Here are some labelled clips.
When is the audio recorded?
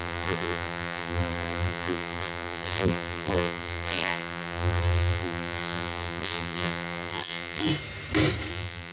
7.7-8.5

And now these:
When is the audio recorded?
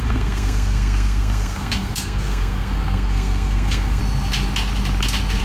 4.0-5.4